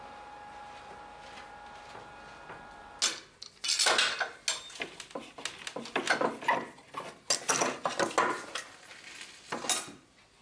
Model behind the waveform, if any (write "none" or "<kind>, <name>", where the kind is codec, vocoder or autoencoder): none